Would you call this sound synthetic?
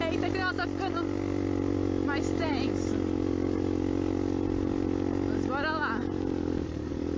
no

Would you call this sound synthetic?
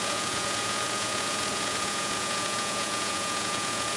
yes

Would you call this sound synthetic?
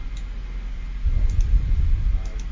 no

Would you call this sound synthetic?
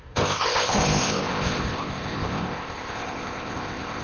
yes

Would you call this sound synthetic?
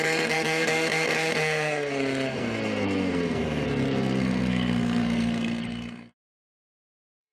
yes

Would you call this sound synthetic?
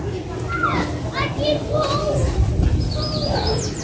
no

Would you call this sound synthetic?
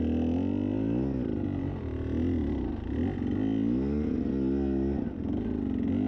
no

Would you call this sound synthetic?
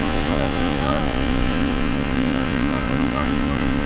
yes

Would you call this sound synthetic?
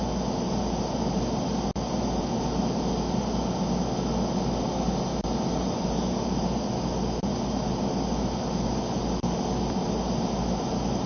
no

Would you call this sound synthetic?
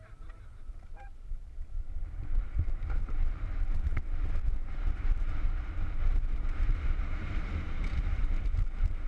yes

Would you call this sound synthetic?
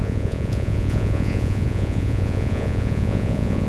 yes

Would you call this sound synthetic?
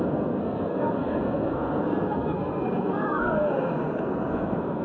yes